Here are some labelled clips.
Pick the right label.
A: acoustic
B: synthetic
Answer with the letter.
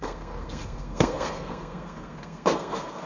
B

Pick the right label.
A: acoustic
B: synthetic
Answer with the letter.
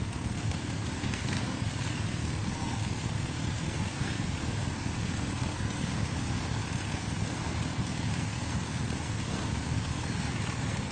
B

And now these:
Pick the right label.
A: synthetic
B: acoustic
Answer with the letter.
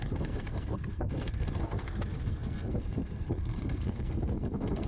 A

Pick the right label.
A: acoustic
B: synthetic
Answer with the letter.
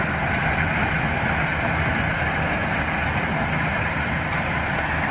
A